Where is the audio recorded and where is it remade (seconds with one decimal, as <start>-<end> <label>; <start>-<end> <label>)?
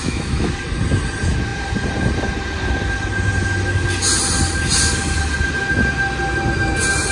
0.0-0.5 remade; 0.5-7.1 recorded